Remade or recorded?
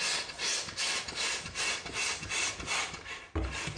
recorded